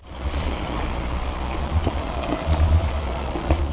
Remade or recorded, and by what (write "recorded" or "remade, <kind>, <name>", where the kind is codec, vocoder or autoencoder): remade, vocoder, Vocos